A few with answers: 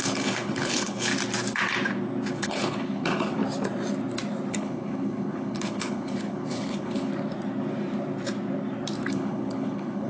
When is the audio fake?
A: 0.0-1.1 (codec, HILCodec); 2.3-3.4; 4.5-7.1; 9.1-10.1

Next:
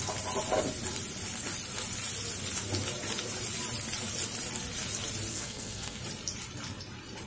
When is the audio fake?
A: 5.3-6.0 (codec, SNAC)

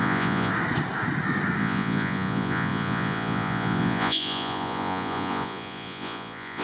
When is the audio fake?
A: 0.0-0.5 (vocoder, Vocos); 1.6-6.6

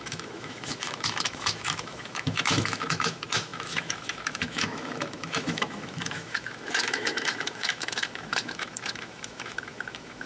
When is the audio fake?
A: 0.0-10.3 (autoencoder, DAC-VAE)

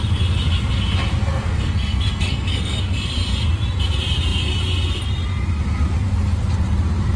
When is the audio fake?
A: 1.2-2.8 (codec, SNAC)

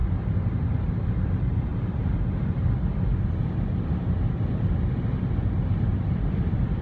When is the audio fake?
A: 0.5-3.1 (vocoder, BigVGAN v2); 5.8-6.8